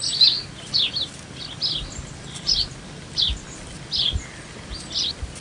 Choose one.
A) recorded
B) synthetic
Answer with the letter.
A